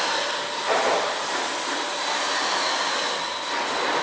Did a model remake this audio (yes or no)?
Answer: no